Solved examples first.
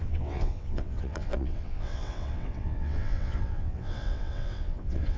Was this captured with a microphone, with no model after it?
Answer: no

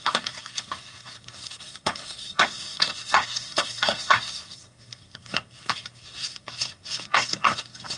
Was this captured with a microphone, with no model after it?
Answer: no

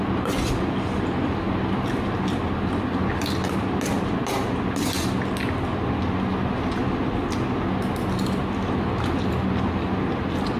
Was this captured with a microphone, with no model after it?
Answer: yes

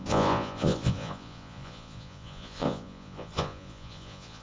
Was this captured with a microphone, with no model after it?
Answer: no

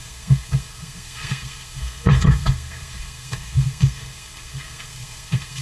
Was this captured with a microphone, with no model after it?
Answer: no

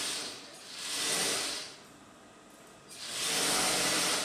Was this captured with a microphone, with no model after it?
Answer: yes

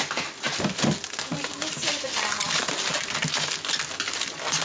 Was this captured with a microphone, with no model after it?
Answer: yes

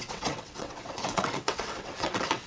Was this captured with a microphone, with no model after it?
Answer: no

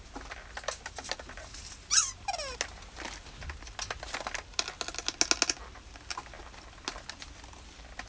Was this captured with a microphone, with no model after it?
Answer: yes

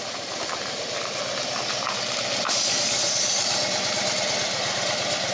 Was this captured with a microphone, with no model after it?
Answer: yes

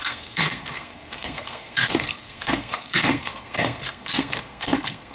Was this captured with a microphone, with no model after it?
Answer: no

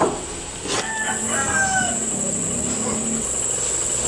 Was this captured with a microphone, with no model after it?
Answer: yes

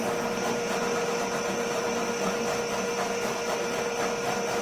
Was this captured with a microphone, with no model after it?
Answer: yes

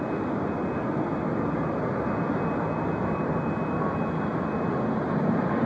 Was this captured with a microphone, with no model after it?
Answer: yes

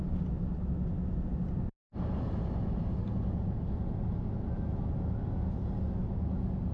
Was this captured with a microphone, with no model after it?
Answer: yes